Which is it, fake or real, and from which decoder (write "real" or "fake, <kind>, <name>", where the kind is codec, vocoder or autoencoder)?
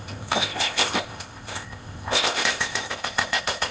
fake, codec, ZipCodec